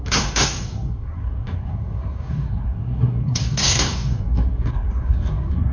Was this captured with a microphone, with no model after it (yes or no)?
no